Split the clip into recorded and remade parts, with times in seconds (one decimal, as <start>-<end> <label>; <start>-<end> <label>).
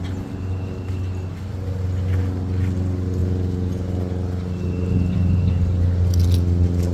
0.0-6.9 recorded